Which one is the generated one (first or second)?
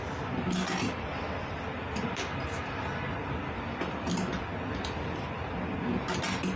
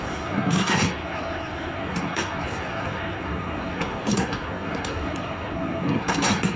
second